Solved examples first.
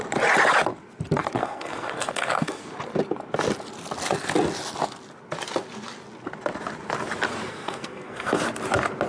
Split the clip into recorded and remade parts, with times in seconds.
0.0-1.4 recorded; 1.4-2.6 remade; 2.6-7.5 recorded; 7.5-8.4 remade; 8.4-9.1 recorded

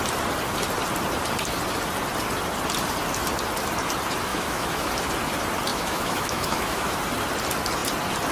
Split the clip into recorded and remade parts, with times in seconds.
0.0-4.3 recorded; 4.3-4.9 remade; 4.9-5.7 recorded; 5.7-7.0 remade; 7.0-8.3 recorded

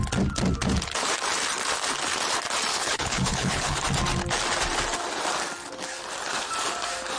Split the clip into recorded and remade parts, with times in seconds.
0.0-2.7 recorded; 2.7-3.8 remade; 3.8-7.2 recorded

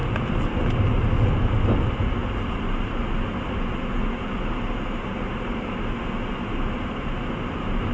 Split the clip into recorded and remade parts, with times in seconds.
0.0-7.9 recorded